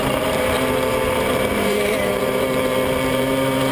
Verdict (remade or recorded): remade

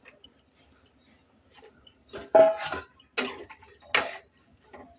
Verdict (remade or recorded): recorded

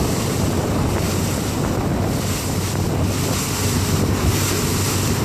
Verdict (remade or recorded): recorded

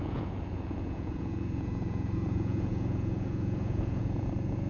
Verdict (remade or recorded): remade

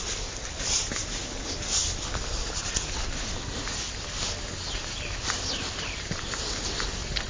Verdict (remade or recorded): recorded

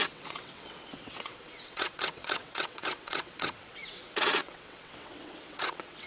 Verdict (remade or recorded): remade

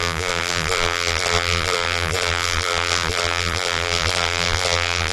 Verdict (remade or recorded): remade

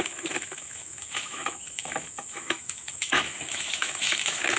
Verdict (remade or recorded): remade